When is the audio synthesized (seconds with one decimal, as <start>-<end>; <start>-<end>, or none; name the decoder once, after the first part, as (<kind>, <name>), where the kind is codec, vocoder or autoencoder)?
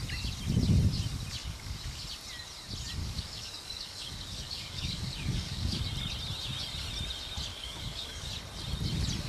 1.4-2.0 (codec, DAC); 3.0-5.8; 7.5-8.3